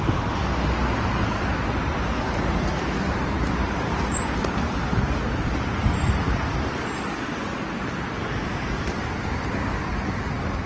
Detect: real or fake real